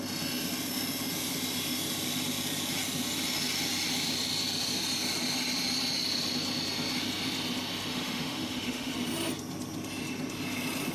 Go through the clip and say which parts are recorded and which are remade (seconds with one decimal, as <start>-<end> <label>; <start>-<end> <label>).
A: 0.0-7.9 recorded; 7.9-8.9 remade; 8.9-10.9 recorded